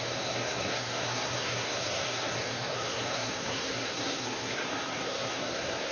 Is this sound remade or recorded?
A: remade